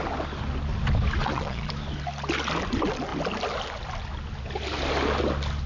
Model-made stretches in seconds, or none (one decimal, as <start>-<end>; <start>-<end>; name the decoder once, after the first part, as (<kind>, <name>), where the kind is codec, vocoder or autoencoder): 1.2-1.7 (vocoder, Vocos)